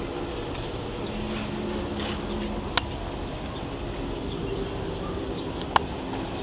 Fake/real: real